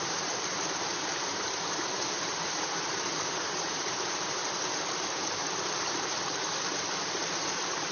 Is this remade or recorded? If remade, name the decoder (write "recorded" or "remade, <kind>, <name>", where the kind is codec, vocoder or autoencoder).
remade, vocoder, BigVGAN v2